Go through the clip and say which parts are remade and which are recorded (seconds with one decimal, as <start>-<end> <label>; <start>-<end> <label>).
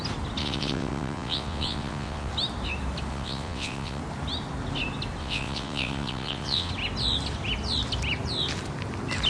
0.0-0.4 recorded; 0.4-2.3 remade; 2.3-3.1 recorded; 3.1-4.0 remade; 4.0-5.2 recorded; 5.2-6.7 remade; 6.7-9.3 recorded